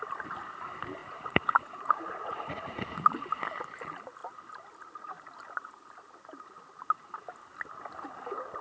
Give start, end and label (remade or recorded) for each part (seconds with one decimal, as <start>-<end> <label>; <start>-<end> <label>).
0.0-1.0 recorded; 1.0-3.4 remade; 3.4-8.6 recorded